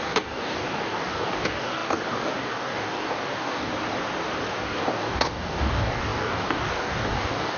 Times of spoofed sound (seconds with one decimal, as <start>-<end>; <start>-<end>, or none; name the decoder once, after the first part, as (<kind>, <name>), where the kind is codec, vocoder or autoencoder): 0.0-3.7 (codec, DAC); 4.6-7.6